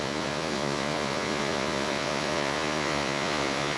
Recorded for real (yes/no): no